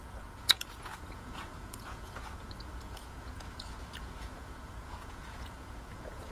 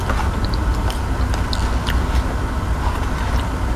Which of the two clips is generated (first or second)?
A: first